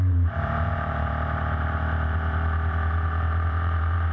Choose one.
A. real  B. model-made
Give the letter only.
B